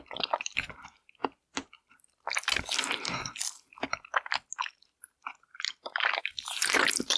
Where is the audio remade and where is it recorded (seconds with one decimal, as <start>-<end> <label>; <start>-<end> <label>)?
0.0-1.2 remade; 1.2-4.7 recorded; 4.7-7.2 remade